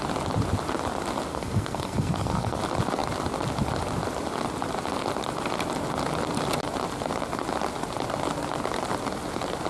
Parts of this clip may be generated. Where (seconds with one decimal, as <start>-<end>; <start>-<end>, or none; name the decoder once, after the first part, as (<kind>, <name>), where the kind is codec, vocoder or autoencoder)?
1.3-2.6 (codec, SNAC)